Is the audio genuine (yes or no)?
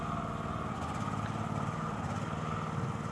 yes